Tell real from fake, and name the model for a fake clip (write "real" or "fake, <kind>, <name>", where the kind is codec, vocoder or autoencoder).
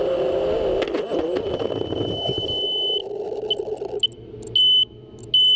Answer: real